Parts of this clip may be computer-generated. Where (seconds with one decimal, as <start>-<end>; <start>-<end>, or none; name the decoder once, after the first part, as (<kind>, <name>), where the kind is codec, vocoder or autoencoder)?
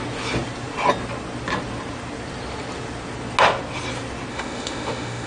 4.3-5.3 (autoencoder, DAC-VAE)